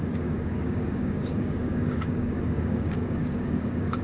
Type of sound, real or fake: fake